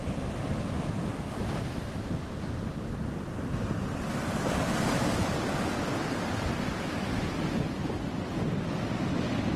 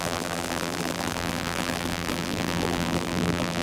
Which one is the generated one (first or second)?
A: second